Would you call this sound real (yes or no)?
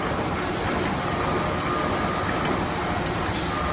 yes